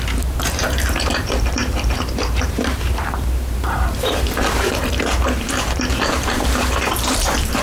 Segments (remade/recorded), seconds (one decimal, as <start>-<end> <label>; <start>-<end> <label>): 0.0-7.6 remade